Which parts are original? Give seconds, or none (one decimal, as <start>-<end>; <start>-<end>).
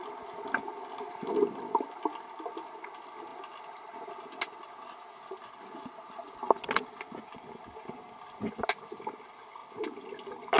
0.0-10.6